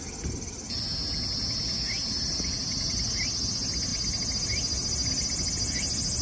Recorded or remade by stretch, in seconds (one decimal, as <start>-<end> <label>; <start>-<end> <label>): 0.0-6.2 recorded